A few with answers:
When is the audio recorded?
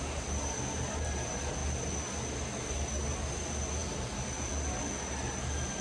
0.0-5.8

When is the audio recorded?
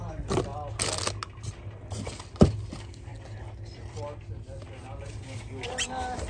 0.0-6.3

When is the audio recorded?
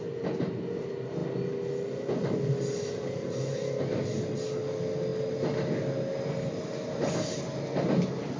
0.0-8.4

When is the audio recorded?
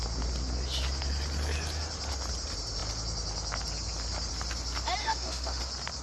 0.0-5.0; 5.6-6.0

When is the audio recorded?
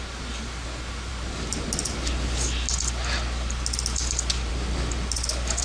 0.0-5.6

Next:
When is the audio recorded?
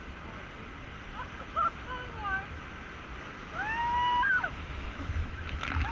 0.0-3.8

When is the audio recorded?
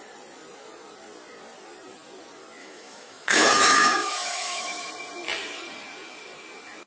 0.0-2.6; 4.9-6.9